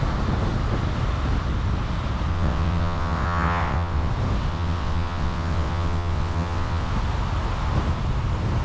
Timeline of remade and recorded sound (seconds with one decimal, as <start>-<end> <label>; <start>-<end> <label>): 0.0-2.3 recorded; 2.3-4.1 remade; 4.1-4.5 recorded; 4.5-6.9 remade; 6.9-8.6 recorded